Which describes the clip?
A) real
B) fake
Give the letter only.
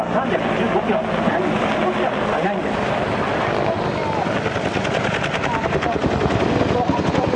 A